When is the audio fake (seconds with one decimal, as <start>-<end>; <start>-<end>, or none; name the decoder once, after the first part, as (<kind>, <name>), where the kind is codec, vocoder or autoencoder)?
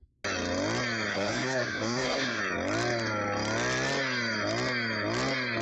1.1-2.4 (codec, SNAC)